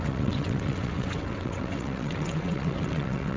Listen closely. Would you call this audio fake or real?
fake